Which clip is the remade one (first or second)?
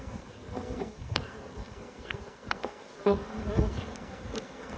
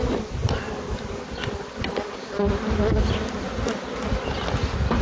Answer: first